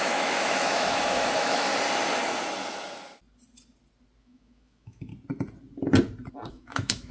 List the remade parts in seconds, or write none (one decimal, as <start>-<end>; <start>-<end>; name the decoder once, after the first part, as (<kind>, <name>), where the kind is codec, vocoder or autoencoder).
0.0-1.7 (autoencoder, DAC-VAE); 4.2-5.1; 6.5-7.1